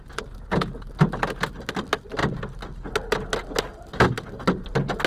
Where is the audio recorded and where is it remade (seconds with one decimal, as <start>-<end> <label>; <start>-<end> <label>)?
0.0-5.1 recorded